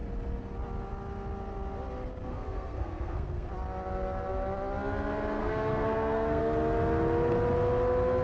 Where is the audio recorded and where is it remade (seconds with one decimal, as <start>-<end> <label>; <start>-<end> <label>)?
0.0-2.3 recorded; 2.3-3.5 remade; 3.5-5.4 recorded; 5.4-6.4 remade; 6.4-8.2 recorded